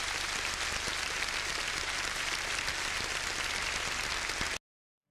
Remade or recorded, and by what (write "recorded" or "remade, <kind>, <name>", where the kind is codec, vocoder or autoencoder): recorded